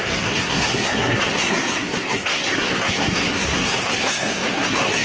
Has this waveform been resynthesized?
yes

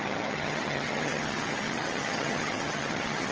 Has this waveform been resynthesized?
yes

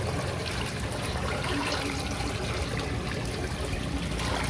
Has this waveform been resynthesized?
no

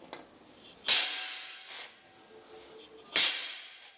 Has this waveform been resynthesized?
no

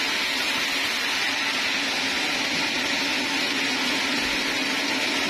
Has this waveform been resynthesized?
no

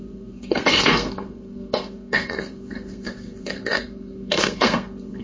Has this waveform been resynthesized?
yes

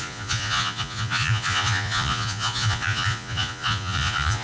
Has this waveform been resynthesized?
yes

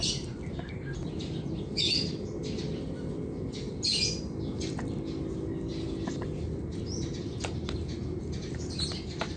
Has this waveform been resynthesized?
no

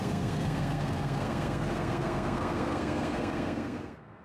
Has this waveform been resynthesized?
yes